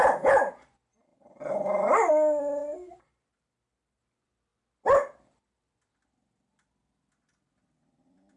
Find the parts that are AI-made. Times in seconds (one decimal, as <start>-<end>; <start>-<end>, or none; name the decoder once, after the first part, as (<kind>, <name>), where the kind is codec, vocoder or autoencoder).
1.1-2.1 (vocoder, BigVGAN v2); 2.6-4.0